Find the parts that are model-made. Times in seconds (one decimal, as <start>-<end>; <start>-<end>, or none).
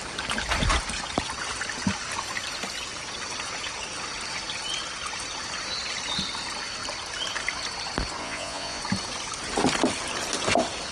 8.2-8.8